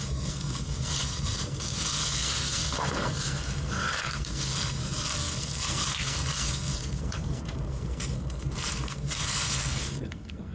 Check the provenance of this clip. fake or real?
fake